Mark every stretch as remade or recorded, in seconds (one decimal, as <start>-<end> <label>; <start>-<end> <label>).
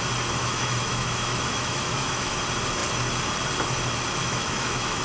0.0-0.5 recorded; 0.5-2.4 remade; 2.4-4.2 recorded; 4.2-5.0 remade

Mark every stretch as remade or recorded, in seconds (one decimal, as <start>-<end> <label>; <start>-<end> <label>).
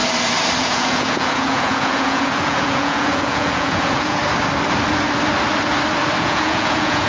0.0-0.6 recorded; 0.6-4.2 remade; 4.2-6.2 recorded; 6.2-7.1 remade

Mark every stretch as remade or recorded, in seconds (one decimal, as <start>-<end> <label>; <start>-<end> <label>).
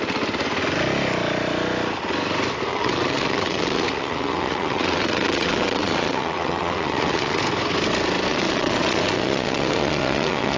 0.0-2.7 recorded; 2.7-7.4 remade; 7.4-8.3 recorded; 8.3-10.6 remade